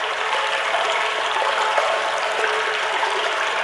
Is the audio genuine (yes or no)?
no